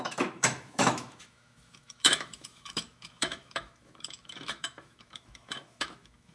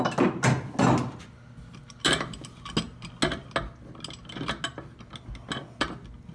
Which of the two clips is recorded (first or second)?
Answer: second